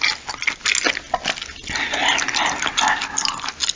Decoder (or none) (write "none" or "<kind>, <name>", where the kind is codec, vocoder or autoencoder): none